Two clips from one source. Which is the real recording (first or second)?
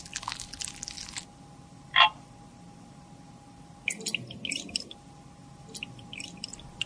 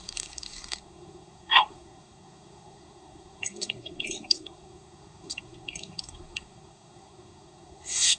first